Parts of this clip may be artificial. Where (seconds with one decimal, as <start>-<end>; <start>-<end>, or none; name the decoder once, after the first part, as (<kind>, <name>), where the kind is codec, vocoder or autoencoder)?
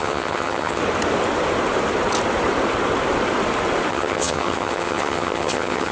0.0-0.8 (vocoder, HiFi-GAN); 3.9-5.9